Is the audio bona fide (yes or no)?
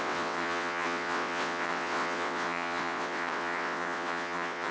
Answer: no